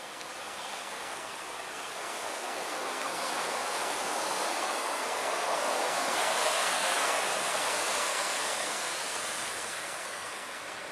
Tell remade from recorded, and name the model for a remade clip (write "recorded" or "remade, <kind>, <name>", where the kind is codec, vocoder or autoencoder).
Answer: remade, codec, SNAC